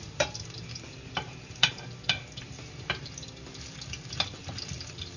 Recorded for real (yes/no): no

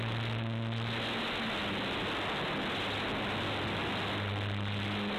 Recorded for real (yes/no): yes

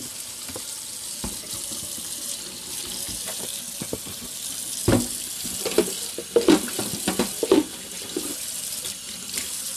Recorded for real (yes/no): yes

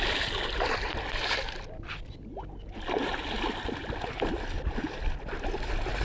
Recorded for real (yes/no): yes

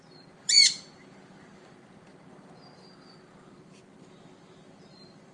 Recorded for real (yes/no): no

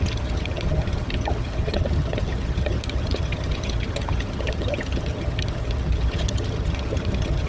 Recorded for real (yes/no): no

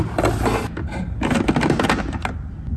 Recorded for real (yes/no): yes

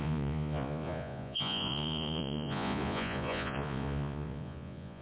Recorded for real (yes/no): no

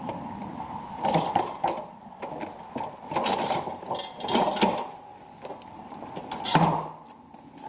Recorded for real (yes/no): yes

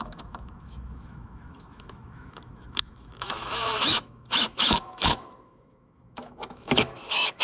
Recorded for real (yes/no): no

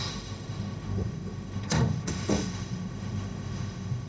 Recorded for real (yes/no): no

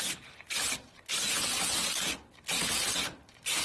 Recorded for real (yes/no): yes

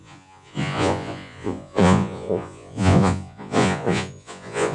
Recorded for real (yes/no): no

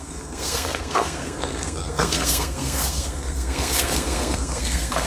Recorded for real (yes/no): no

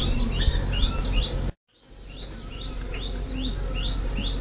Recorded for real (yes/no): yes